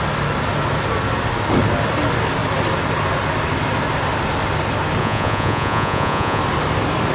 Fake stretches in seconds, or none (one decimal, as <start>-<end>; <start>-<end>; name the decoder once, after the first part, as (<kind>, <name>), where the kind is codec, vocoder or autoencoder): 5.0-6.4 (vocoder, Vocos)